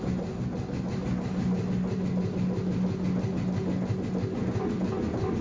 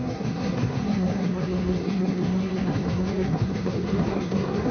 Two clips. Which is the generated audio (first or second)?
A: second